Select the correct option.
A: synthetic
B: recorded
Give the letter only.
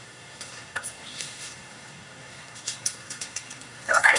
A